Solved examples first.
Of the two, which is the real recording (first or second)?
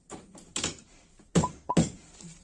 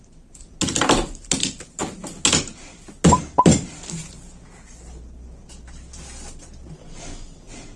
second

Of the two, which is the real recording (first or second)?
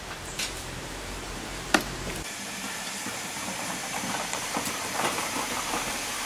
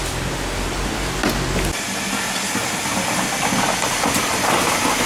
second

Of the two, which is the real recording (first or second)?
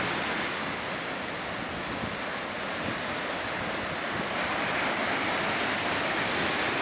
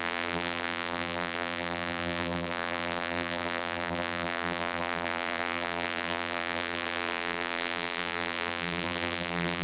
first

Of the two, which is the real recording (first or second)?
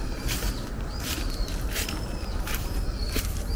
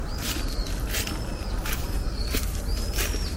second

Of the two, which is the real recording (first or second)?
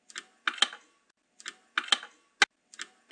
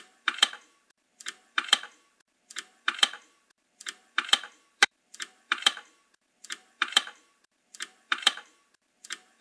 first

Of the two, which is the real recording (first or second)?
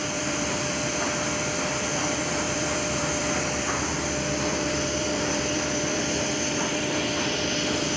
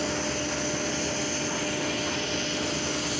second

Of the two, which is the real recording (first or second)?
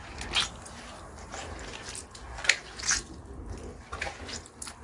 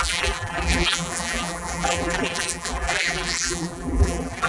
first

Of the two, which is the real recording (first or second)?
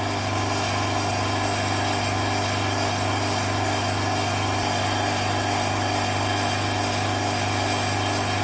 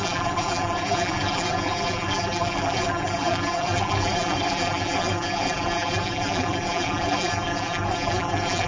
first